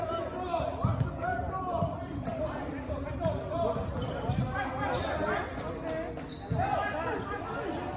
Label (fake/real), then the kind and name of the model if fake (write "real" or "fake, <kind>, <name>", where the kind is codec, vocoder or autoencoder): real